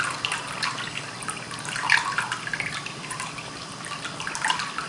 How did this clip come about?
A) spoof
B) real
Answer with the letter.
B